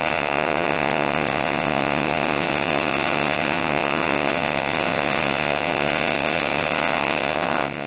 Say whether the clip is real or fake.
fake